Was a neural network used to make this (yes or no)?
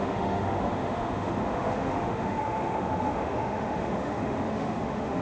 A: yes